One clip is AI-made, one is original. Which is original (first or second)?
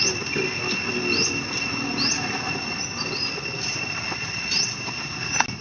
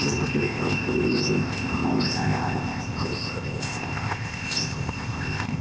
first